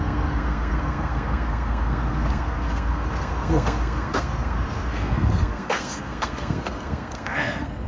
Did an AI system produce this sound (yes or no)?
yes